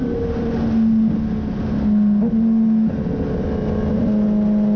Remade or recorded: recorded